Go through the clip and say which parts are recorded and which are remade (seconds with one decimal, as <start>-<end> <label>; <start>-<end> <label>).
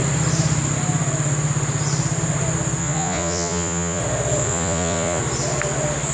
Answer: 0.0-2.8 recorded; 2.8-4.0 remade; 4.0-4.4 recorded; 4.4-5.2 remade; 5.2-6.1 recorded